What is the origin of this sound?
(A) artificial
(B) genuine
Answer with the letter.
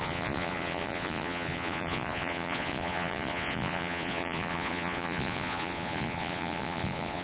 A